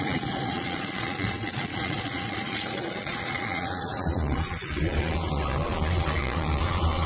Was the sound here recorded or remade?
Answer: remade